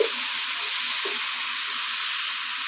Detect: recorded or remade recorded